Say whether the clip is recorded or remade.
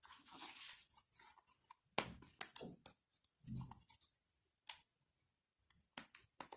recorded